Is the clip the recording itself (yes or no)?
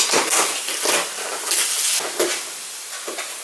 yes